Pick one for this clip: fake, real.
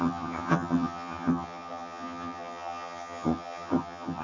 fake